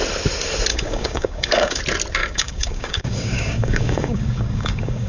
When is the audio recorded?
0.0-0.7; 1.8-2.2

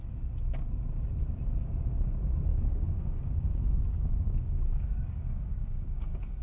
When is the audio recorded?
0.0-2.5

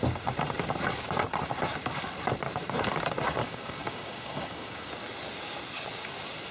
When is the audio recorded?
0.0-3.4; 4.9-6.5

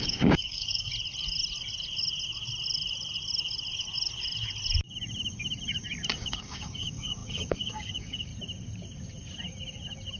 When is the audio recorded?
0.9-6.1; 8.3-10.2

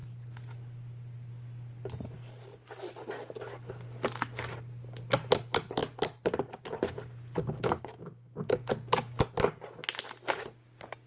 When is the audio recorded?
0.0-7.4; 8.4-11.1

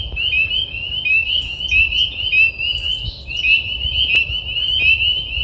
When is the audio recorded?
0.0-1.1; 1.6-5.4

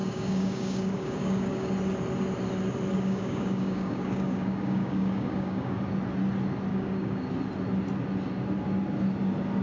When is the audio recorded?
1.7-2.9; 5.8-6.7; 7.3-9.6